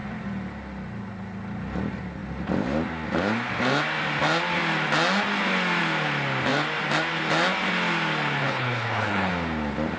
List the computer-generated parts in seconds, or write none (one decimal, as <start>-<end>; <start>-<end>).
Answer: 8.4-9.3